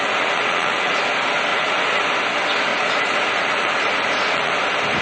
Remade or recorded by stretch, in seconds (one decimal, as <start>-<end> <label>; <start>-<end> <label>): 0.0-1.0 remade; 1.0-1.5 recorded; 1.5-2.0 remade; 2.0-2.7 recorded; 2.7-4.5 remade; 4.5-5.0 recorded

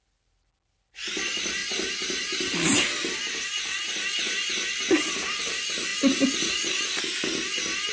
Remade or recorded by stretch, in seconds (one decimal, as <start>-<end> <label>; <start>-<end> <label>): 0.0-7.9 recorded

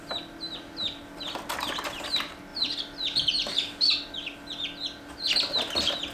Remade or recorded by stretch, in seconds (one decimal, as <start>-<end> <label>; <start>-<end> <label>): 0.0-6.1 recorded

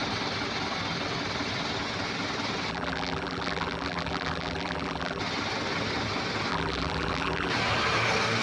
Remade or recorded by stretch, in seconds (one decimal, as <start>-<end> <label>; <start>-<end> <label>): 0.0-2.7 recorded; 2.7-5.2 remade; 5.2-6.5 recorded; 6.5-7.5 remade; 7.5-8.4 recorded

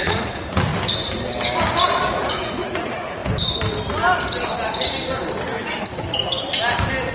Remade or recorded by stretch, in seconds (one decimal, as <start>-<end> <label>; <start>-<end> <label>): 0.0-0.7 remade; 0.7-2.3 recorded; 2.3-3.2 remade; 3.2-7.1 recorded

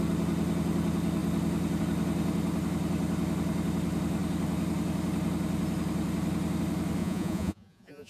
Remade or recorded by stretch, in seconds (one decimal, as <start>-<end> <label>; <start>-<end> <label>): 0.0-7.0 recorded; 7.0-8.1 remade

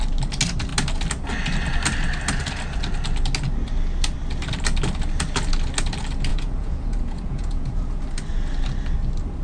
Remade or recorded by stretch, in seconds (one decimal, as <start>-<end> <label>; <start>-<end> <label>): 0.0-6.3 recorded; 6.3-8.0 remade; 8.0-9.4 recorded